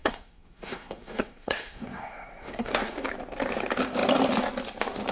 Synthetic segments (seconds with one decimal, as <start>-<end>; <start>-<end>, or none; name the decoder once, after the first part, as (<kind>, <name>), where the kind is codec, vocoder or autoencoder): 0.0-3.1 (codec, SNAC)